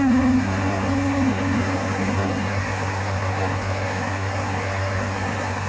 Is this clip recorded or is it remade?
remade